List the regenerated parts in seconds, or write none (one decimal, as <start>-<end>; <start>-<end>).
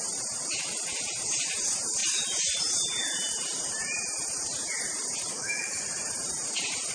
5.3-5.8